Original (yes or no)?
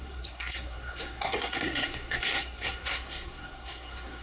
no